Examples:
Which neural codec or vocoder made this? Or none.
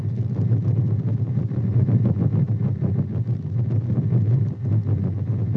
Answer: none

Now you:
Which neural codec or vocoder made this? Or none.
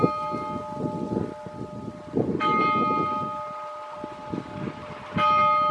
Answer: none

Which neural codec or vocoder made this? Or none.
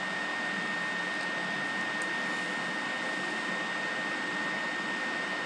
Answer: none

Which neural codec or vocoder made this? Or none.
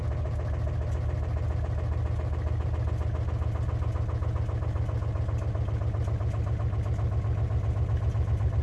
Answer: none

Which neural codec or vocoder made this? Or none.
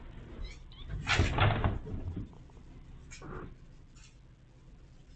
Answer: none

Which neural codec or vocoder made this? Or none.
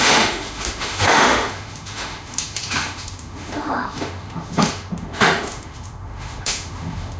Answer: autoencoder, DAC-VAE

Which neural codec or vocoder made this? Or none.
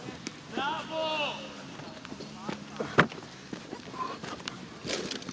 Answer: none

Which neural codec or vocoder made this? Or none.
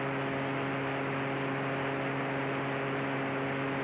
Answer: none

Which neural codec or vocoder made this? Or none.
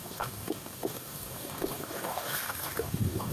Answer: codec, DAC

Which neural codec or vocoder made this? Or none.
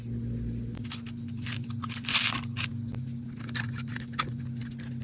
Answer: none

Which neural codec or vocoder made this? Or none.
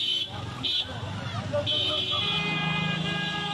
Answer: none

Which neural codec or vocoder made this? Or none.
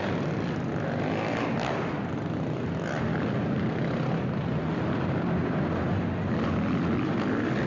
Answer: none